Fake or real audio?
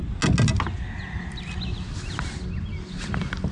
real